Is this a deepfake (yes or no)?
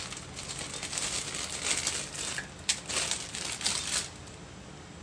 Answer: no